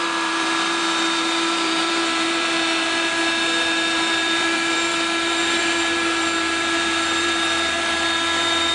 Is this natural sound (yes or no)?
no